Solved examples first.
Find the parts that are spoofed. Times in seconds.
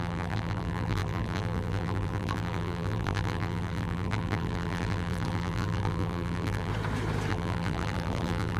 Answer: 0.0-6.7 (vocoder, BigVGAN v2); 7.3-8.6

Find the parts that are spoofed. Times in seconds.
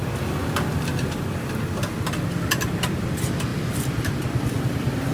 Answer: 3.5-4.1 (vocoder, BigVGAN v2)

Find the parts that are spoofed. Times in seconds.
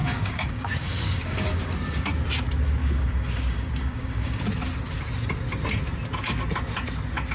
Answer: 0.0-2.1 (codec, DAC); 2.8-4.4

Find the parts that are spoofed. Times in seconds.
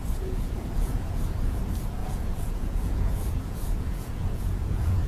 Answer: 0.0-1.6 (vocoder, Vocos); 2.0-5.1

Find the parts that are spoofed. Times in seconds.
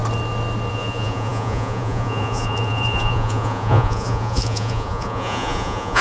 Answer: 0.7-6.0 (vocoder, Vocos)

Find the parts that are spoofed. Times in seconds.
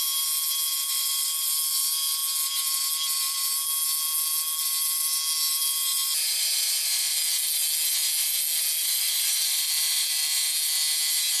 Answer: none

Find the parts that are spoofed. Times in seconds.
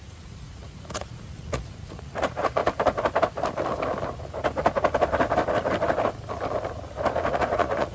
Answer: 0.0-2.6 (vocoder, Vocos); 7.3-7.9